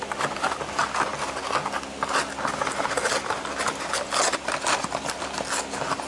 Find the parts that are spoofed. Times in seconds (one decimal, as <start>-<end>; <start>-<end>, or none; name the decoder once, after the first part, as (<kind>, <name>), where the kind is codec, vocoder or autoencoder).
none

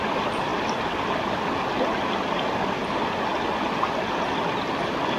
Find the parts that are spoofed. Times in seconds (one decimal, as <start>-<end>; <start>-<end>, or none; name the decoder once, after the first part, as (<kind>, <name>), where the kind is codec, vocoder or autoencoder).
none